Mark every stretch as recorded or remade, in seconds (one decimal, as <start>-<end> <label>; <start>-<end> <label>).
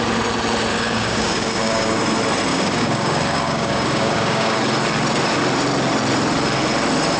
0.0-0.7 recorded; 0.7-2.0 remade; 2.0-2.5 recorded; 2.5-4.6 remade; 4.6-7.2 recorded